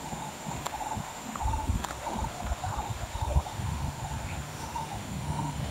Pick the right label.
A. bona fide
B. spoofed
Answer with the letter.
B